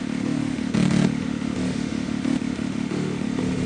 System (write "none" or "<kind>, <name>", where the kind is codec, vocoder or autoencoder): autoencoder, DAC-VAE